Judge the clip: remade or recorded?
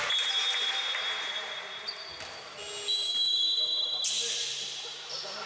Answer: recorded